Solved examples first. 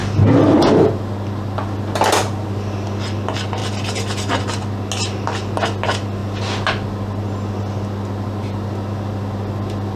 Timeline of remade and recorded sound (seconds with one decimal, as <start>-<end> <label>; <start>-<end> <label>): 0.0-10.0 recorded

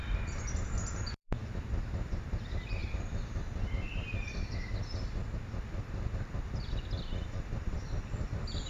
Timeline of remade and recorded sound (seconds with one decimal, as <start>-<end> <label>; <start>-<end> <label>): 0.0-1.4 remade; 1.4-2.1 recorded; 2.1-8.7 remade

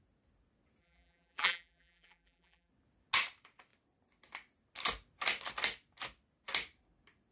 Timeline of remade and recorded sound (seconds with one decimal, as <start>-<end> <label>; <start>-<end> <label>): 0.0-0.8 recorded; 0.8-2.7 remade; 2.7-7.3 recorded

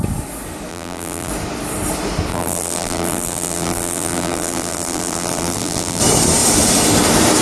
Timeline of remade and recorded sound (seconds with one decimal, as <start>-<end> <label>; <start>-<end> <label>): 0.0-0.7 recorded; 0.7-1.3 remade; 1.3-2.3 recorded; 2.3-6.0 remade; 6.0-7.4 recorded

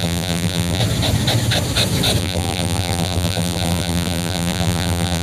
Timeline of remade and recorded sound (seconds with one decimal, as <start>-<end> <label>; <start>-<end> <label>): 0.0-0.8 remade; 0.8-2.2 recorded; 2.2-5.2 remade

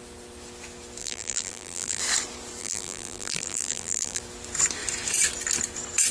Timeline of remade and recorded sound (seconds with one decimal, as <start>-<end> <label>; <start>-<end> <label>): 0.0-1.0 recorded; 1.0-2.0 remade; 2.0-2.6 recorded; 2.6-4.2 remade; 4.2-6.1 recorded

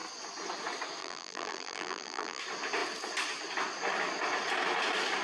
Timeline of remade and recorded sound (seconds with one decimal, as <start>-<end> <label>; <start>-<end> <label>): 0.0-1.0 recorded; 1.0-2.4 remade; 2.4-5.2 recorded